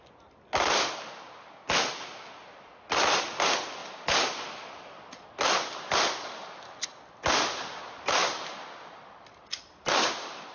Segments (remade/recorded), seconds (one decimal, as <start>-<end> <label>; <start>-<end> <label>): 0.0-10.5 recorded